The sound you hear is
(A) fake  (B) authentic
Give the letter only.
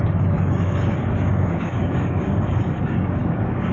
A